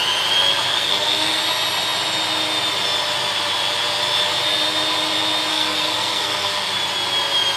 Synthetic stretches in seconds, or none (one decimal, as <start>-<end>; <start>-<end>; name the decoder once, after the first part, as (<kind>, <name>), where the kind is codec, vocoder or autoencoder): 0.7-1.4 (codec, SNAC); 5.5-6.7